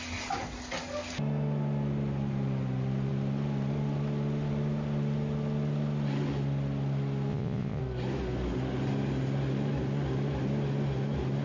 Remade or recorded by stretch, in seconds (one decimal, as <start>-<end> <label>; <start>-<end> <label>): 0.0-7.3 recorded; 7.3-7.8 remade; 7.8-11.4 recorded